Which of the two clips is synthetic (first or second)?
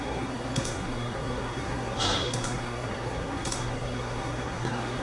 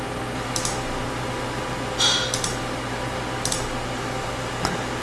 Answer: first